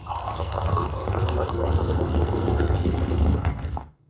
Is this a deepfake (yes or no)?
yes